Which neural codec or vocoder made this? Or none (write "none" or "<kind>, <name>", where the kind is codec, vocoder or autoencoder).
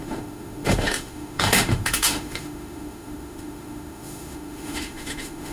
autoencoder, DAC-VAE